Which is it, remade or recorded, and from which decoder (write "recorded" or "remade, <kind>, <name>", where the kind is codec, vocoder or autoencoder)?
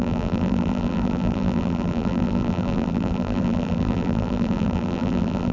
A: remade, vocoder, BigVGAN v2